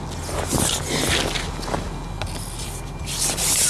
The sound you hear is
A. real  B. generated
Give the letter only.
A